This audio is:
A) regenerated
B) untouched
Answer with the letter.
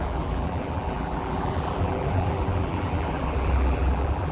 A